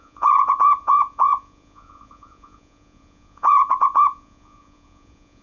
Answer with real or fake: fake